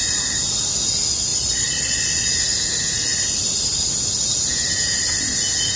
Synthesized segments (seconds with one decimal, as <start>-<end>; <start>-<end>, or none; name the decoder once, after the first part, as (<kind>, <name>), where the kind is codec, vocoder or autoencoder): 1.3-2.0 (vocoder, Vocos)